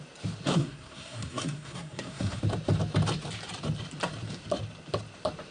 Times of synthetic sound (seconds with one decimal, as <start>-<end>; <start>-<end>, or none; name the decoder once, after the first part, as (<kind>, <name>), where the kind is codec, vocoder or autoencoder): 0.5-2.4 (codec, SNAC)